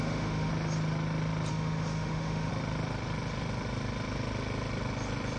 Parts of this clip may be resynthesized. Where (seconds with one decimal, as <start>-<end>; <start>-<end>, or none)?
0.0-0.5; 1.5-2.5